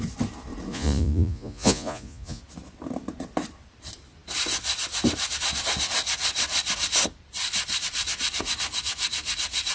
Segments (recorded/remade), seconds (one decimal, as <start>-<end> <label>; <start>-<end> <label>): 0.0-0.7 recorded; 0.7-2.4 remade; 2.4-9.7 recorded